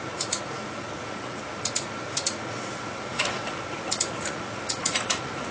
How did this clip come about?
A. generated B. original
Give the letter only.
A